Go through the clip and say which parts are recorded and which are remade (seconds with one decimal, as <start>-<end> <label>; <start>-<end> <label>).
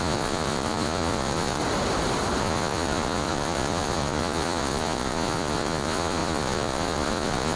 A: 0.0-1.6 remade; 1.6-2.4 recorded; 2.4-7.6 remade